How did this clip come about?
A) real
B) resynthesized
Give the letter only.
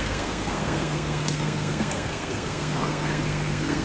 B